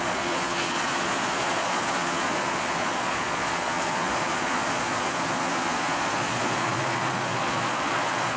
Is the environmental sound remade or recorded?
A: remade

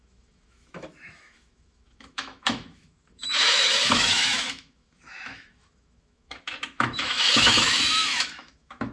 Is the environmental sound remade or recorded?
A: remade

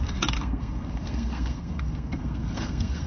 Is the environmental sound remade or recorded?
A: remade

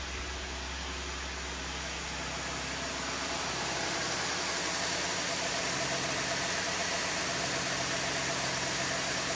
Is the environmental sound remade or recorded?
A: recorded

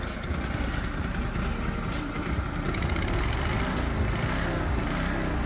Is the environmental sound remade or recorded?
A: recorded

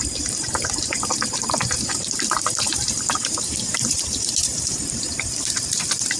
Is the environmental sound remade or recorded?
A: remade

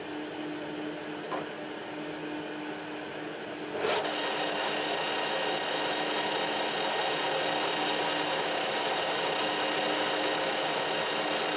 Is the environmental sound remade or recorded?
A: recorded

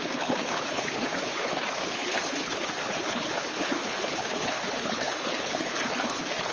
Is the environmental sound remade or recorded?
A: remade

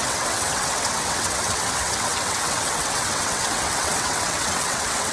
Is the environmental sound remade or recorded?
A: remade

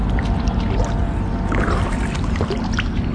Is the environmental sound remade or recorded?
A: recorded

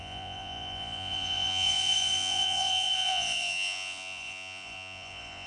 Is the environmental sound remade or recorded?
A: remade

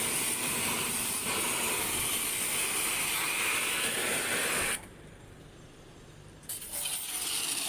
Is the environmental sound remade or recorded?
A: recorded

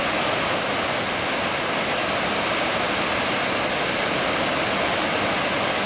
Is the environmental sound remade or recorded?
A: recorded